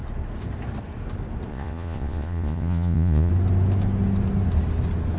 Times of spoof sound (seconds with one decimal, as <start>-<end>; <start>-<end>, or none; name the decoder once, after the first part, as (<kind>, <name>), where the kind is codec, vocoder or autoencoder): 1.5-3.3 (vocoder, Vocos)